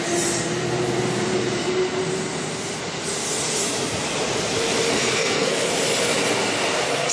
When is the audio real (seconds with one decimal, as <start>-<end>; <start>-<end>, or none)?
0.0-4.9; 5.7-7.1